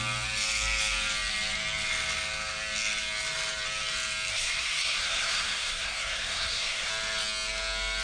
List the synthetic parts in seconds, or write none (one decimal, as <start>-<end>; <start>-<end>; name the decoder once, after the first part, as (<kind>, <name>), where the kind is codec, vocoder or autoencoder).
4.3-6.9 (codec, SNAC)